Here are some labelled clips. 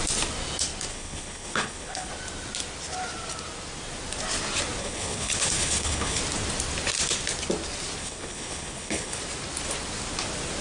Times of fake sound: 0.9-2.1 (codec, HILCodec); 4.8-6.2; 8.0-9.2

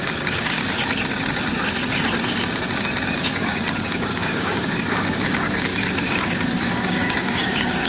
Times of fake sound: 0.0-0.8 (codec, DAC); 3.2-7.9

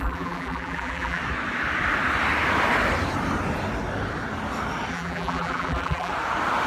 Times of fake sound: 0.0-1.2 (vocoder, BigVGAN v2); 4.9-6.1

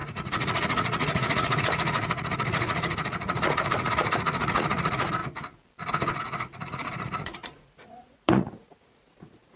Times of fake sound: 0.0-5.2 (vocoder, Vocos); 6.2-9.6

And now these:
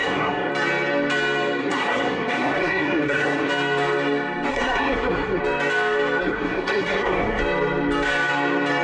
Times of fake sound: 0.0-0.5 (codec, SNAC); 1.6-3.5; 4.5-5.4; 6.2-7.4

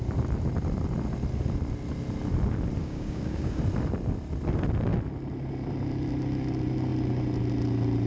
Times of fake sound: 2.8-3.6 (codec, DAC)